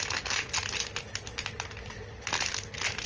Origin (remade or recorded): recorded